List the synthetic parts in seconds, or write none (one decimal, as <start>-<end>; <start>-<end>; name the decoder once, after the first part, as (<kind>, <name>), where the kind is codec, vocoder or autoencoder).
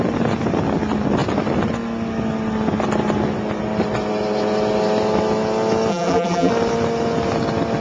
5.9-6.5 (vocoder, BigVGAN v2)